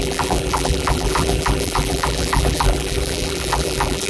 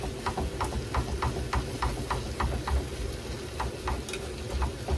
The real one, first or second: second